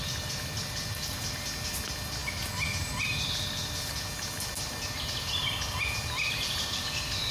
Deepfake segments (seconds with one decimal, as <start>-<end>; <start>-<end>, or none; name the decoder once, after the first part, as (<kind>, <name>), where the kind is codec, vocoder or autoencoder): none

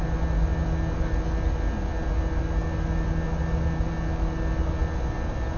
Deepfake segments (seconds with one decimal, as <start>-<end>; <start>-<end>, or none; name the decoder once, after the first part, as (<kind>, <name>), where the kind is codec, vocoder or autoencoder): none

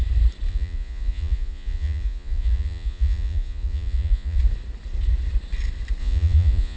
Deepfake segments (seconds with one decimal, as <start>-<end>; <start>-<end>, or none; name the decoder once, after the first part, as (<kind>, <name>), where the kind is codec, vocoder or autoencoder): 0.5-4.4 (vocoder, Vocos); 6.0-6.8

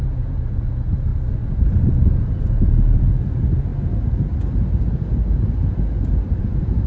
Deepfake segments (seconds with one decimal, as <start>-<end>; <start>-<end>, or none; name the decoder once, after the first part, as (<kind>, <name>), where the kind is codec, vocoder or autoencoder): 0.0-1.1 (vocoder, Vocos); 1.9-3.7; 6.4-6.9

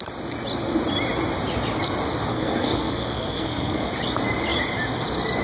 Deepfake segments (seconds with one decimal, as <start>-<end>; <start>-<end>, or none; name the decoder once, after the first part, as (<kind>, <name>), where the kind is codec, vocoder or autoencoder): 2.3-3.9 (codec, SNAC)